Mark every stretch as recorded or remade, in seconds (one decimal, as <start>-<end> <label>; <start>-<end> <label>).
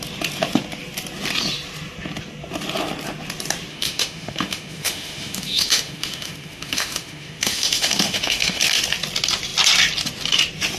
0.0-3.7 recorded; 3.7-8.6 remade; 8.6-10.8 recorded